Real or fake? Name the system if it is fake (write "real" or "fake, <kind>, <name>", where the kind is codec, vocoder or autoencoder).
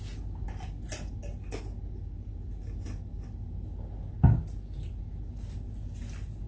real